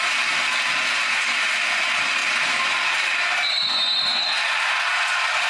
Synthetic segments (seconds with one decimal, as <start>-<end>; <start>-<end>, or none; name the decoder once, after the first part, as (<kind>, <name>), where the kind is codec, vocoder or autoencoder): none